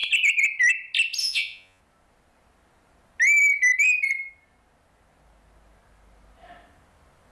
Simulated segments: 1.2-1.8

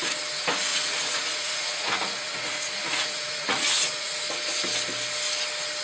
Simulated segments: 0.7-4.2

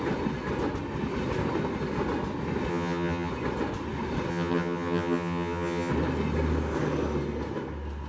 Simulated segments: 2.7-3.3; 4.3-5.9

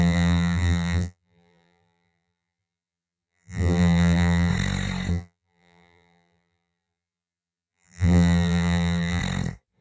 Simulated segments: 0.0-4.5; 5.1-9.2

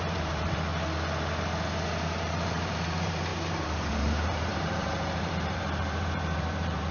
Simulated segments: 0.0-0.7; 2.1-6.9

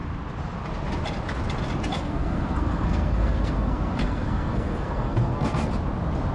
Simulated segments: 1.9-5.7

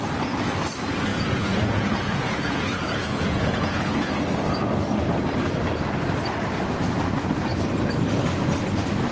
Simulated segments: 1.1-4.1